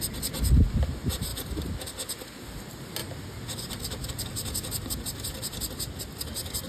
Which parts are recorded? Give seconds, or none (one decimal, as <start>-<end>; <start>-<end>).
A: 0.0-6.7